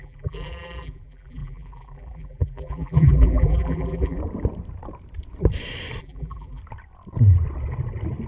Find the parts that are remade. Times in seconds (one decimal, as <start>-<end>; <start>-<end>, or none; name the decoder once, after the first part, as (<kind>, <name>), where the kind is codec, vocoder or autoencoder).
0.0-4.2 (vocoder, BigVGAN v2); 6.0-6.6